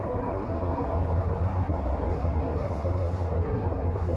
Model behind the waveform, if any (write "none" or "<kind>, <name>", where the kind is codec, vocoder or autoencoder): codec, SNAC